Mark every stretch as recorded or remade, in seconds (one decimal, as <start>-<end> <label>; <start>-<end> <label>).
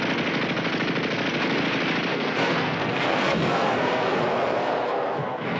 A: 0.0-2.1 recorded; 2.1-5.6 remade